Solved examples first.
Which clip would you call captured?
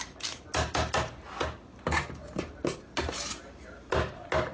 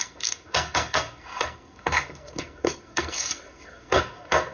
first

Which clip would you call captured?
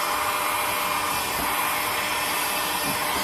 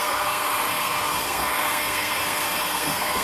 first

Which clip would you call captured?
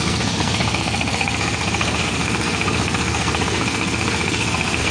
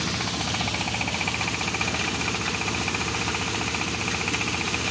second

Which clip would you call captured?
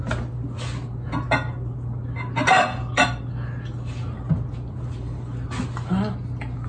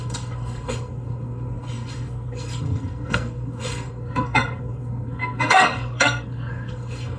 first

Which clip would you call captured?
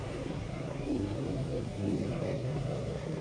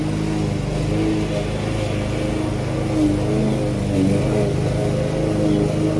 second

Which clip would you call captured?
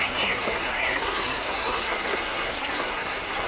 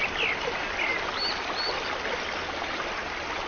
second